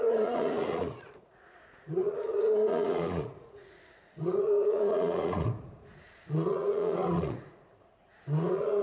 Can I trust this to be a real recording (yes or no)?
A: no